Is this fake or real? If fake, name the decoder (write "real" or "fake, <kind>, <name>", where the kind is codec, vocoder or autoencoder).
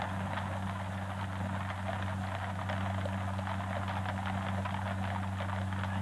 real